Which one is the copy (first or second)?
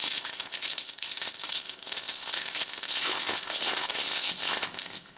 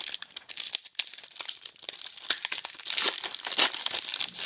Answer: first